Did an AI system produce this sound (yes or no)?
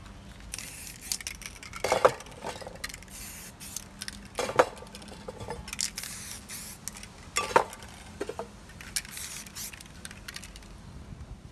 no